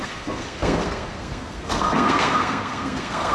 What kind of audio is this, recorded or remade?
remade